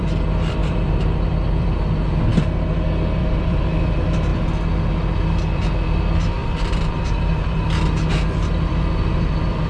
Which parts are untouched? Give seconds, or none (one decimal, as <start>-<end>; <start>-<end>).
2.3-3.2; 4.3-5.2